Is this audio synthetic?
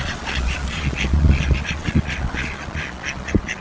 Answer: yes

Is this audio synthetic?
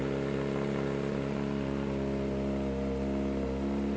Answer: no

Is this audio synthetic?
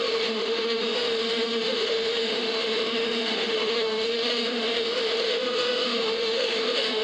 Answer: yes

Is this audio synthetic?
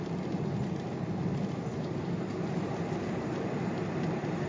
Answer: no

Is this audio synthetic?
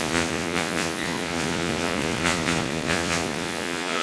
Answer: yes